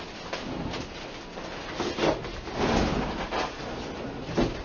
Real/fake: real